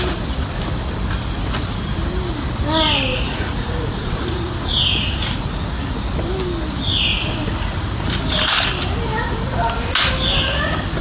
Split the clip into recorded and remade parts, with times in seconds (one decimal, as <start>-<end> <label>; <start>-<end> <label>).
0.0-3.1 recorded; 3.1-5.4 remade; 5.4-7.1 recorded; 7.1-8.1 remade; 8.1-11.0 recorded

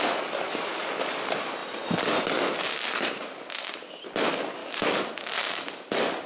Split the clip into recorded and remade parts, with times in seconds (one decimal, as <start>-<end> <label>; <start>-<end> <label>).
0.0-6.3 recorded

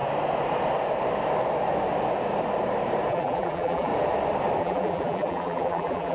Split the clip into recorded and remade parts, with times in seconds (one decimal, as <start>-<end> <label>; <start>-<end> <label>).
0.0-3.1 recorded; 3.1-3.9 remade; 3.9-4.6 recorded; 4.6-6.1 remade

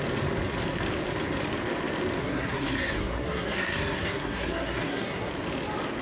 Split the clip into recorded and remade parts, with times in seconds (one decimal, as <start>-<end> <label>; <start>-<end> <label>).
0.0-2.2 recorded; 2.2-5.3 remade; 5.3-6.0 recorded

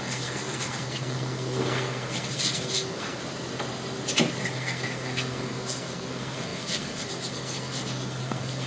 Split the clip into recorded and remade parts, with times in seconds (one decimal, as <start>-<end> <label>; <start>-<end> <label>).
0.0-3.2 remade; 3.2-4.4 recorded; 4.4-8.7 remade

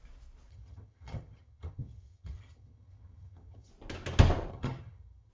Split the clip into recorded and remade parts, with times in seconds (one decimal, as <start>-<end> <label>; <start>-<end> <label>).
0.0-0.5 recorded; 0.5-3.7 remade; 3.7-4.5 recorded; 4.5-5.3 remade